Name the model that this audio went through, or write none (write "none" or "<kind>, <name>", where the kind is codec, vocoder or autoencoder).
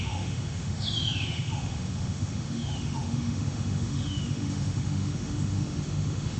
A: autoencoder, DAC-VAE